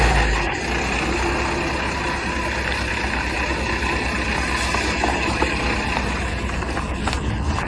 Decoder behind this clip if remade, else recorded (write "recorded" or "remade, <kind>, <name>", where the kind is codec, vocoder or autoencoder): recorded